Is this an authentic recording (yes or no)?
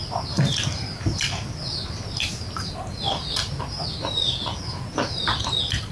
yes